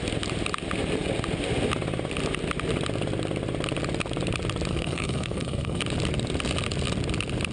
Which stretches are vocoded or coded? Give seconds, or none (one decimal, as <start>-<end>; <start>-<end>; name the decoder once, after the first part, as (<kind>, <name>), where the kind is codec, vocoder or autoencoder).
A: 4.7-5.8 (codec, SNAC)